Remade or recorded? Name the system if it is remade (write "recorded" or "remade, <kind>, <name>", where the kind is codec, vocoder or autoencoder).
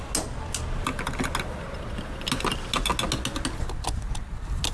recorded